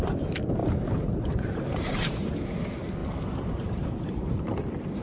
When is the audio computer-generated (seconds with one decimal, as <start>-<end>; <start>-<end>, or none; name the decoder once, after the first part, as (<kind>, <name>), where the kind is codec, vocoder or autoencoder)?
0.6-2.3 (vocoder, BigVGAN v2); 3.0-4.5